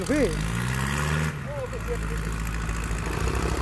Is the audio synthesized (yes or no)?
no